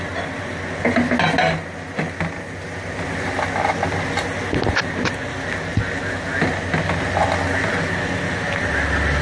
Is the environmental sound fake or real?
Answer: real